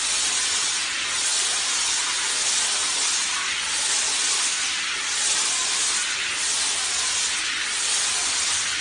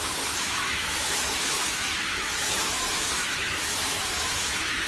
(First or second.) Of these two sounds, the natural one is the first